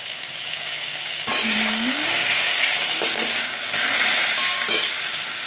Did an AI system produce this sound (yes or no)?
yes